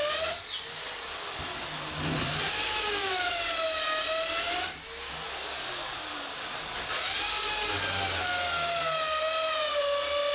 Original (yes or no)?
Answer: yes